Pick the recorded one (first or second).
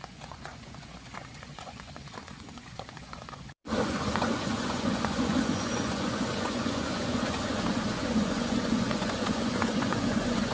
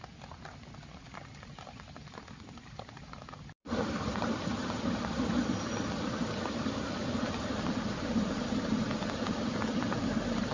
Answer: second